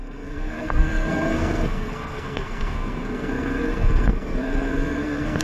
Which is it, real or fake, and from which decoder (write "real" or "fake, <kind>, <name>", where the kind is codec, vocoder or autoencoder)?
fake, codec, SNAC